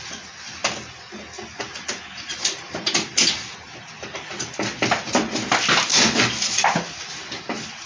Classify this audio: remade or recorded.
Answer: recorded